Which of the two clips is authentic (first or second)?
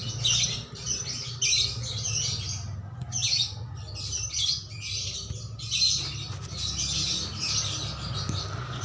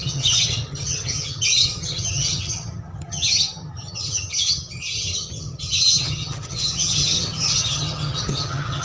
first